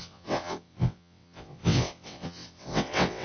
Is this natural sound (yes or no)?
no